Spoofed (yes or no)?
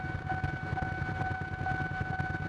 no